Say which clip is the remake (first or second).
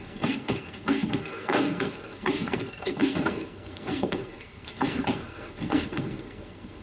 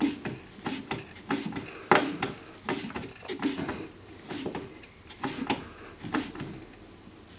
first